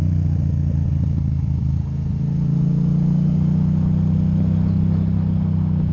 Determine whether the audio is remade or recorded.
recorded